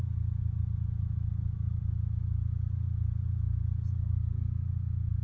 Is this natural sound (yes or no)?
yes